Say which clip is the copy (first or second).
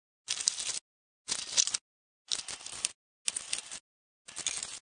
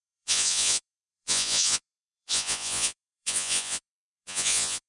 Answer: second